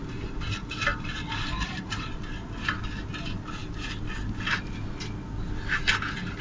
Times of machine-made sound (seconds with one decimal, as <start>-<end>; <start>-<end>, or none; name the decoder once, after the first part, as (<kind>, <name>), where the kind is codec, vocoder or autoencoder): 0.0-2.1 (vocoder, BigVGAN v2)